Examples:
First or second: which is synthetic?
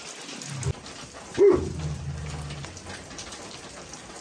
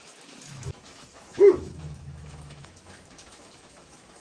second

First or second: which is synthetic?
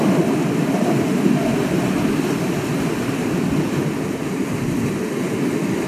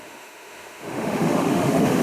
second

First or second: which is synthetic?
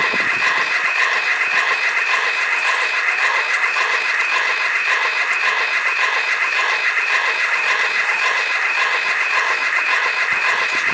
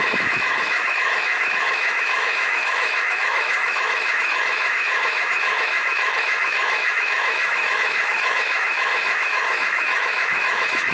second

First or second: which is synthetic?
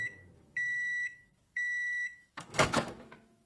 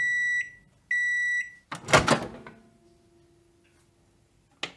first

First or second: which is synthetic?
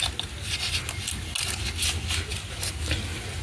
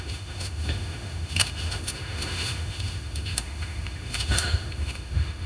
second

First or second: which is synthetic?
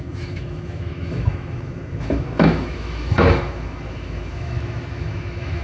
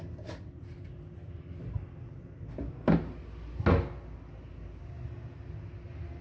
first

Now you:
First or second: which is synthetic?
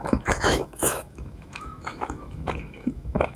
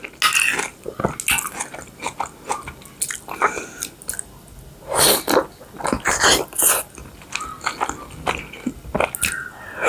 first